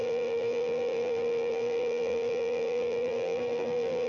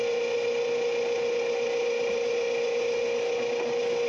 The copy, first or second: first